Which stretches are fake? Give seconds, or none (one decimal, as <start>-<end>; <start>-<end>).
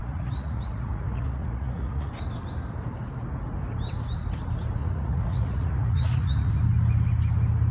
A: 0.0-2.1; 4.8-6.6